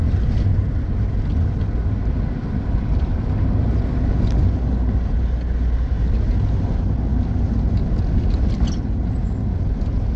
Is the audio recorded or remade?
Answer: recorded